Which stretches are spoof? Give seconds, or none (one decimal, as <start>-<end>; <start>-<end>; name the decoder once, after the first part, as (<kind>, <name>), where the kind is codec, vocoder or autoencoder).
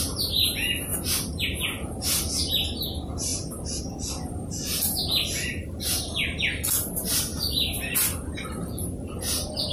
0.9-2.5 (vocoder, BigVGAN v2); 5.5-6.1